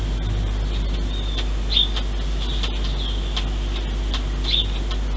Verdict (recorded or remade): recorded